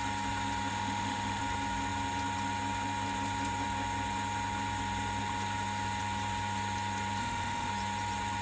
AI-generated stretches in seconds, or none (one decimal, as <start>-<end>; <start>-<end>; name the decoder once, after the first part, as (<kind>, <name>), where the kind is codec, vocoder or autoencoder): 0.7-1.4 (autoencoder, DAC-VAE); 7.2-7.7